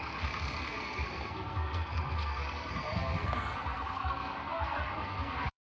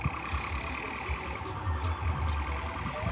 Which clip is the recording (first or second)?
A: second